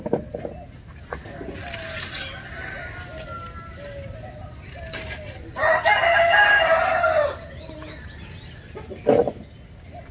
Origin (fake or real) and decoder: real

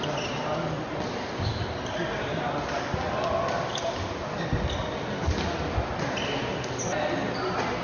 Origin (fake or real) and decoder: real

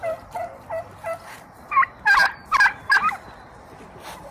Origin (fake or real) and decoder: fake, vocoder, BigVGAN v2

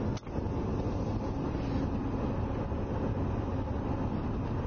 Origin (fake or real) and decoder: real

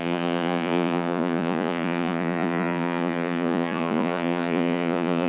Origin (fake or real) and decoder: fake, vocoder, Vocos